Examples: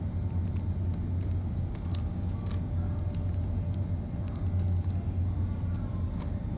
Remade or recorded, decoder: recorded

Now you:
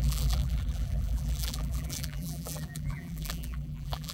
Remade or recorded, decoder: remade, vocoder, BigVGAN v2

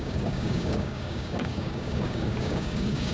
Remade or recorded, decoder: remade, codec, DAC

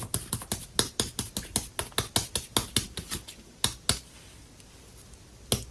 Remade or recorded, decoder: recorded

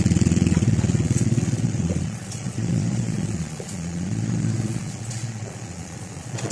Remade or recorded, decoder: remade, vocoder, Vocos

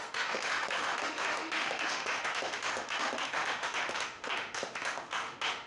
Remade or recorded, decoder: remade, autoencoder, DAC-VAE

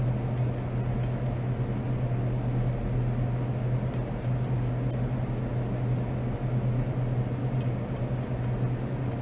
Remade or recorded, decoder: recorded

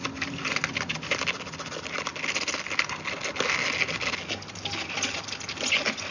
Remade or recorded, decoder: recorded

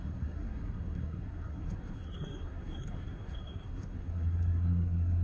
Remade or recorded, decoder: remade, codec, SNAC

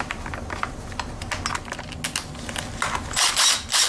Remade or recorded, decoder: recorded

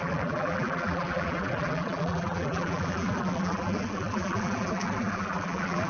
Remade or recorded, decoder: remade, vocoder, BigVGAN v2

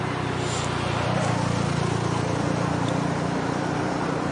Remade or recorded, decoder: recorded